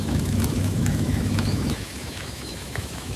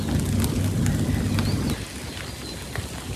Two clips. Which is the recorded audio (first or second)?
second